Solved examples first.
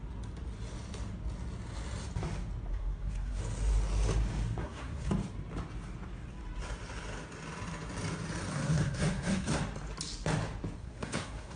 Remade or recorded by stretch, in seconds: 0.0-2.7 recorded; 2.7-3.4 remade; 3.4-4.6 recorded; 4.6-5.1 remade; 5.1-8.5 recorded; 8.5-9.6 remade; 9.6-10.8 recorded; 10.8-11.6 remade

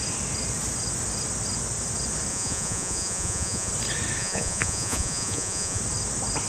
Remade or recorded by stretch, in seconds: 0.0-2.3 recorded; 2.3-3.7 remade; 3.7-4.2 recorded; 4.2-5.8 remade; 5.8-6.5 recorded

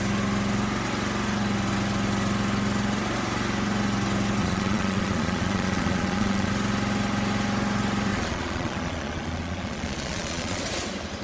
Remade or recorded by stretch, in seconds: 0.0-4.4 recorded; 4.4-6.5 remade; 6.5-8.1 recorded; 8.1-10.6 remade; 10.6-11.2 recorded

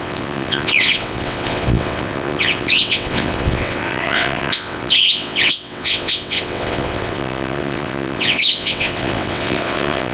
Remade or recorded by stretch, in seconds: 0.0-10.1 remade

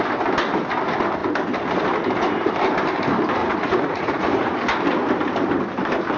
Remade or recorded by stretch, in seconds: 0.0-3.4 recorded; 3.4-4.5 remade; 4.5-6.2 recorded

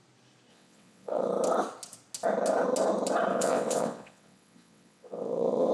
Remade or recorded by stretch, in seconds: 0.0-0.5 recorded; 0.5-1.3 remade; 1.3-3.3 recorded; 3.3-5.7 remade